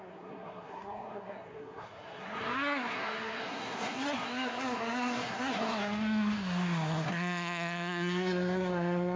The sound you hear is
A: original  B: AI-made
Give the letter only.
B